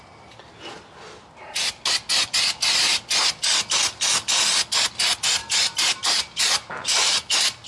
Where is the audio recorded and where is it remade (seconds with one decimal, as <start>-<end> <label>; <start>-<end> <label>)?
0.0-5.4 recorded; 5.4-7.3 remade; 7.3-7.7 recorded